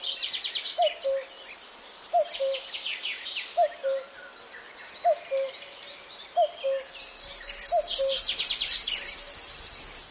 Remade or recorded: recorded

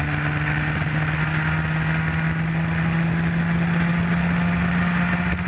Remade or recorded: recorded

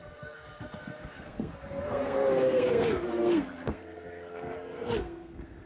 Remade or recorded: remade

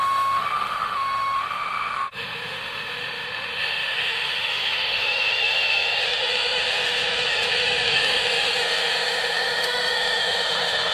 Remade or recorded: remade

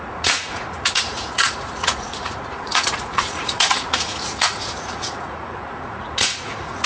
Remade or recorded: remade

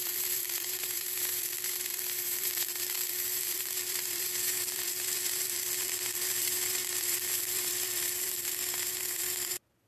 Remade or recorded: remade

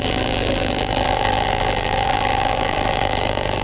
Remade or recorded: remade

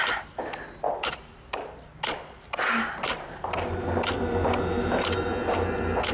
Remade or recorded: recorded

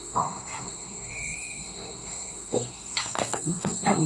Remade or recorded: remade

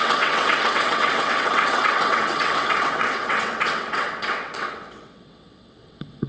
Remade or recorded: remade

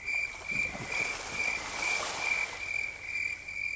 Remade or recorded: recorded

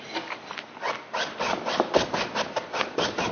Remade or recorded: recorded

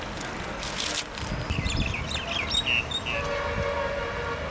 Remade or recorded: recorded